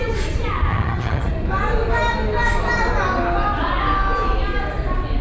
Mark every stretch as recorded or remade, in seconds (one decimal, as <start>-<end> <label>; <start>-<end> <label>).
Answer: 0.0-0.7 recorded; 0.7-1.3 remade; 1.3-5.2 recorded